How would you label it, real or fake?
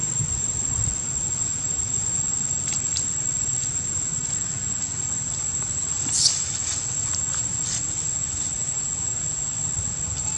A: real